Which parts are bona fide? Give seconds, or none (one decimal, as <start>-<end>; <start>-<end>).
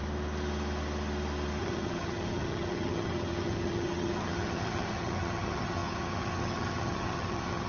0.0-1.6